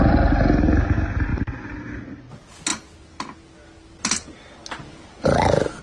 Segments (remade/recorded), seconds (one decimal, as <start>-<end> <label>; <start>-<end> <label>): 0.0-5.8 recorded

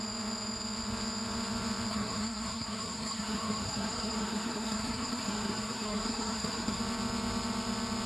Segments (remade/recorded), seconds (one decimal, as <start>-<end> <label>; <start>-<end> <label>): 0.0-1.9 recorded; 1.9-6.8 remade; 6.8-8.1 recorded